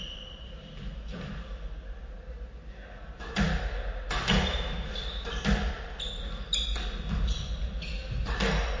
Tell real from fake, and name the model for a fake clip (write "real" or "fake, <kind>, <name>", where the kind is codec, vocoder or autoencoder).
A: real